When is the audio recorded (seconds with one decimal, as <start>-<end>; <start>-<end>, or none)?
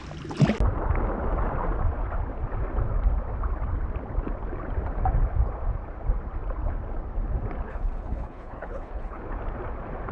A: 0.0-7.7; 9.2-10.1